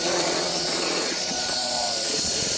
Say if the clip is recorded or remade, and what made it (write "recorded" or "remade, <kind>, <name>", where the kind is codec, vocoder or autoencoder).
remade, vocoder, Vocos